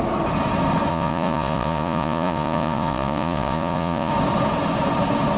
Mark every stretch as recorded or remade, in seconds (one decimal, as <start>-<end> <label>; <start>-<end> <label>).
0.0-0.9 recorded; 0.9-4.1 remade; 4.1-5.4 recorded